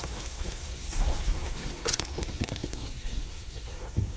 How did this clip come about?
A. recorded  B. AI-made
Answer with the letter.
B